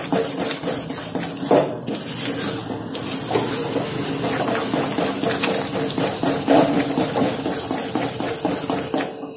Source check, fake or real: real